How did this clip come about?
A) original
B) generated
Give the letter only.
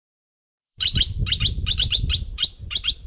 B